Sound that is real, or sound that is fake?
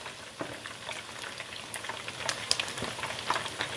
real